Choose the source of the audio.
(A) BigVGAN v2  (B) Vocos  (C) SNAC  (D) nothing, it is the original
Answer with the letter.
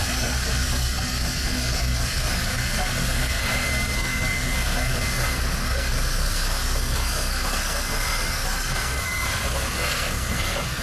C